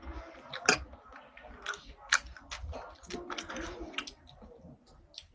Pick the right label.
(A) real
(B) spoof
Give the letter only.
A